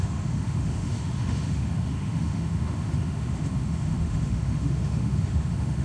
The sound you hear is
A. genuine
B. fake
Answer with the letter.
B